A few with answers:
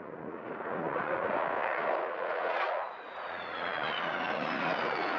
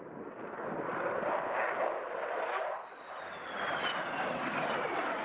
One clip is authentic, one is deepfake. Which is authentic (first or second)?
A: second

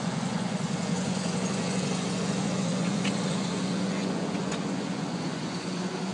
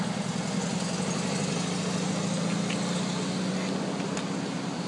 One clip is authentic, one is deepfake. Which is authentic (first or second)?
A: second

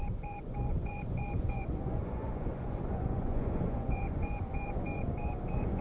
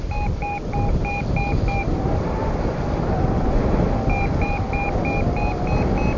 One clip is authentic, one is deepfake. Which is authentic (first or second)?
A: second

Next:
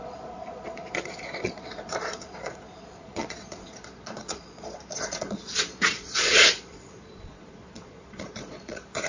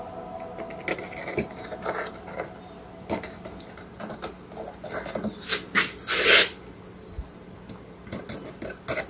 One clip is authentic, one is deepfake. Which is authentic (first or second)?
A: second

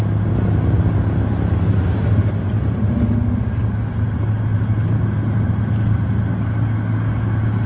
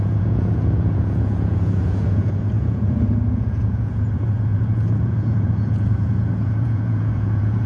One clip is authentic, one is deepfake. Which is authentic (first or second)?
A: first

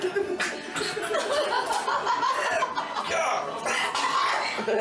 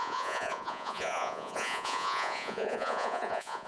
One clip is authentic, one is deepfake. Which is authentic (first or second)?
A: first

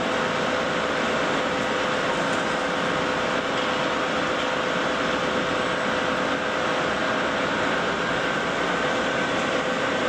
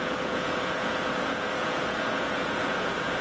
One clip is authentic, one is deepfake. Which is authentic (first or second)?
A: first